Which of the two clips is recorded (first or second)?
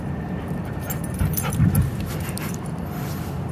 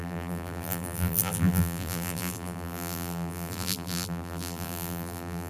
first